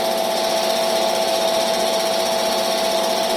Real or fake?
real